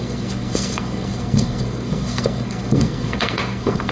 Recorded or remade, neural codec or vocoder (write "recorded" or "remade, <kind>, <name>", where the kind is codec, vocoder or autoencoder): remade, codec, SNAC